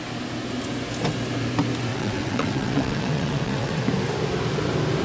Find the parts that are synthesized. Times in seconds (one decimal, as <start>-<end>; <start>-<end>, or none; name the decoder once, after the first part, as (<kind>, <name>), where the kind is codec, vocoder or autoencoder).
1.9-3.8 (vocoder, WaveNeXt)